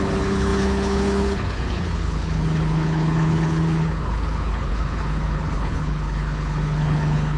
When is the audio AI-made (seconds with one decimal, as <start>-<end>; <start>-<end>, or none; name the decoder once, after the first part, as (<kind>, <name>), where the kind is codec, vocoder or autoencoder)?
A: 0.0-7.4 (codec, HILCodec)